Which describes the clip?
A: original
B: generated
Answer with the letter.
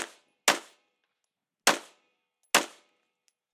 A